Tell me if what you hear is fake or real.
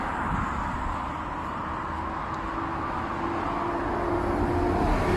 real